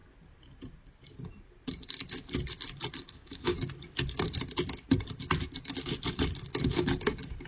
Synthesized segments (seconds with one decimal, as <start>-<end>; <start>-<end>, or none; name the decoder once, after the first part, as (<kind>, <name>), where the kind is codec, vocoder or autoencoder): 3.0-3.5 (autoencoder, DAC-VAE)